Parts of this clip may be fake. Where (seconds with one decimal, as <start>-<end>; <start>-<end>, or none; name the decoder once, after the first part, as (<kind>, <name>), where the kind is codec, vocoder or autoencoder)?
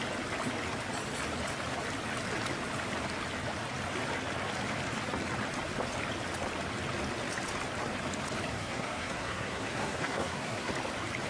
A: 8.5-10.7 (codec, SNAC)